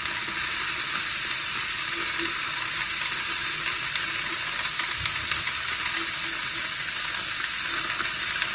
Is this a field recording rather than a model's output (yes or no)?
yes